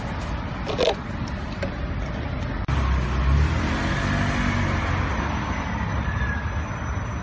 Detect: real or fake real